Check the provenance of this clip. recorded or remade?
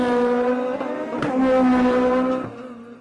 recorded